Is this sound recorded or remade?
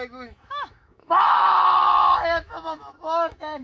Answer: remade